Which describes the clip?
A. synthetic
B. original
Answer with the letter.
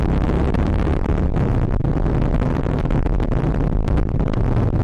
A